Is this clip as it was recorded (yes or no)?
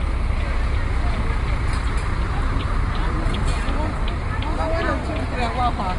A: yes